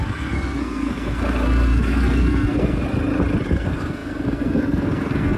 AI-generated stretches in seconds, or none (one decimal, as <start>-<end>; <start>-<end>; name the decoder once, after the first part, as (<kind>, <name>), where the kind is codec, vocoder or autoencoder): 0.0-2.8 (codec, SNAC); 3.5-5.4